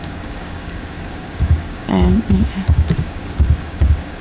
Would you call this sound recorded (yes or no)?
no